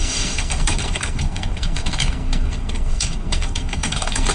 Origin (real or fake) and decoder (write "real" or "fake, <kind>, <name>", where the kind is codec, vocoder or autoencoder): fake, codec, SNAC